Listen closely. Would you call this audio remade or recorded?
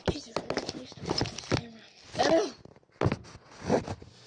recorded